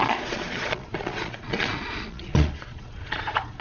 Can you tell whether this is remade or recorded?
remade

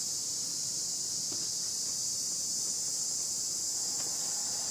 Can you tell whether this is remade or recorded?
recorded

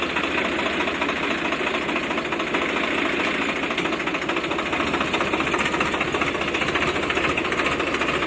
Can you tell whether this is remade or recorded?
recorded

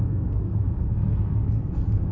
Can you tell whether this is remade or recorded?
remade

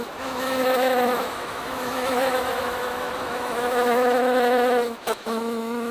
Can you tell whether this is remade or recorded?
remade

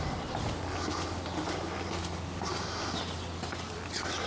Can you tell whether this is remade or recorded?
recorded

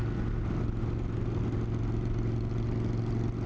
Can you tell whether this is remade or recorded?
recorded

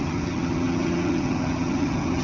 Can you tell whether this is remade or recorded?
remade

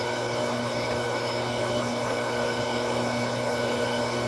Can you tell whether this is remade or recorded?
remade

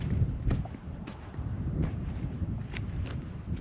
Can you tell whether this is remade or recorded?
remade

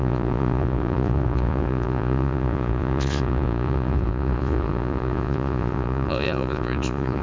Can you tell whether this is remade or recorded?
remade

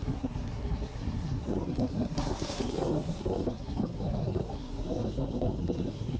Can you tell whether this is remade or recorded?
remade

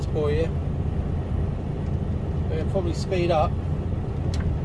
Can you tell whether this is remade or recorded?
recorded